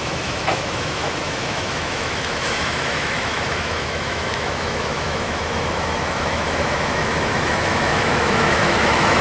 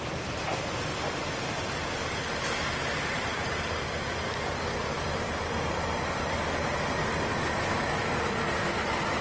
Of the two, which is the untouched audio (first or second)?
second